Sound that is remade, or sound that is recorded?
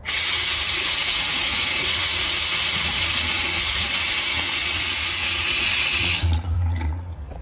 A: remade